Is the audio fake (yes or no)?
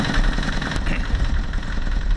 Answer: no